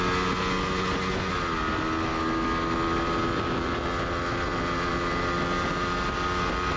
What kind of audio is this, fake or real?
real